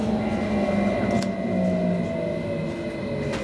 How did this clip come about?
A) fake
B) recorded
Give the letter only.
B